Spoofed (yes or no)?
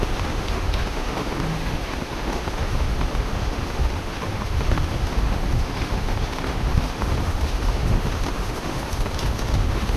yes